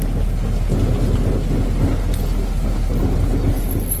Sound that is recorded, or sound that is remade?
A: recorded